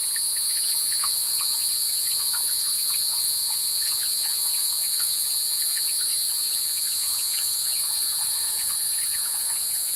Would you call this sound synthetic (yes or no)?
yes